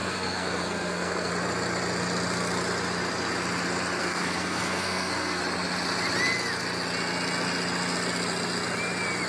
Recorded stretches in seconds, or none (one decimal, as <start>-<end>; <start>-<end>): 1.3-4.0; 5.4-9.3